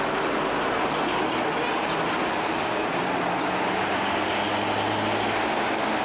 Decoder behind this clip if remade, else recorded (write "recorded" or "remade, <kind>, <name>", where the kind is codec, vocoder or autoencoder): recorded